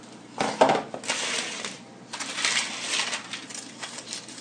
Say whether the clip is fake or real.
real